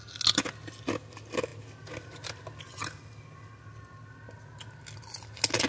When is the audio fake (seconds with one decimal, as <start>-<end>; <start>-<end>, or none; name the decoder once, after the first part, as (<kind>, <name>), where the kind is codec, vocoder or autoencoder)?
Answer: none